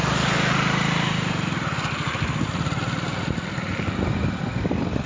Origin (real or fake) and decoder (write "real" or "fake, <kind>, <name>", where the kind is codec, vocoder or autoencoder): real